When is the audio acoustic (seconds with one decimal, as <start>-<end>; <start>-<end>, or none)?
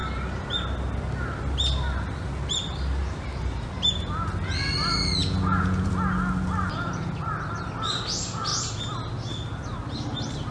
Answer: 0.0-5.2; 5.9-10.5